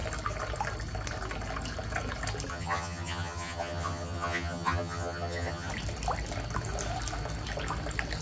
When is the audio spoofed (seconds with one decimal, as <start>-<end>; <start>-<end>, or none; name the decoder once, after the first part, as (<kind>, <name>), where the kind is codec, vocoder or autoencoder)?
2.5-5.7 (vocoder, HiFi-GAN)